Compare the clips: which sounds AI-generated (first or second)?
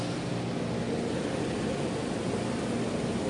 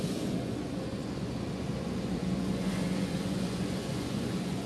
second